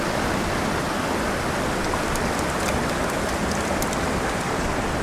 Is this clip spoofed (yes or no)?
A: no